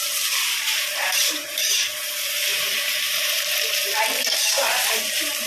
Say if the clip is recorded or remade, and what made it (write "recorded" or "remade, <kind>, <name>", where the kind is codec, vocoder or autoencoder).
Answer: remade, vocoder, BigVGAN v2